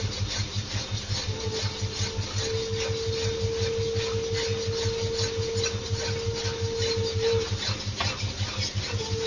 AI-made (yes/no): no